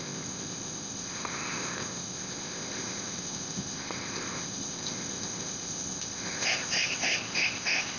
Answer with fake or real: fake